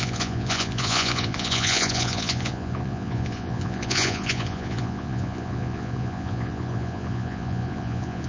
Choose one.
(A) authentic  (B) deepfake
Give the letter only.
B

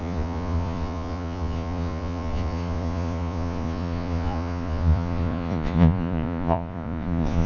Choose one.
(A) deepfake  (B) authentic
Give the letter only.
A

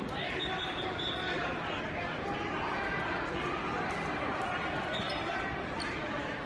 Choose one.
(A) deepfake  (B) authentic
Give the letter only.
B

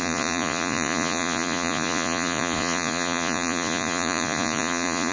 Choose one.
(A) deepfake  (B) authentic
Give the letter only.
A